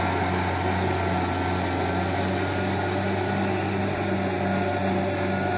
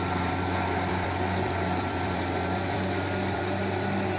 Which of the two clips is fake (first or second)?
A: second